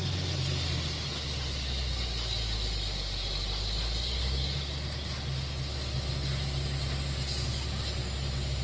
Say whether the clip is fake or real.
real